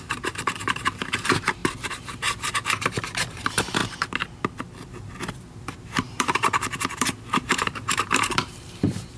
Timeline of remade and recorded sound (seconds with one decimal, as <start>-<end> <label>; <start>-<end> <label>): 0.0-3.8 remade; 3.8-4.9 recorded; 4.9-9.2 remade